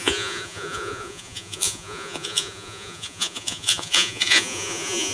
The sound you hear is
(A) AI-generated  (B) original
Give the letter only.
A